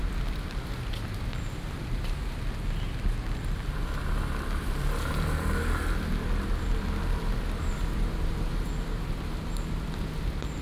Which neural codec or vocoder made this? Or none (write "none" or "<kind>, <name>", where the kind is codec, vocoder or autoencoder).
none